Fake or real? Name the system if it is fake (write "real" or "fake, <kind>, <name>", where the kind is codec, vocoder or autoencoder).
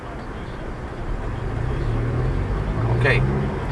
real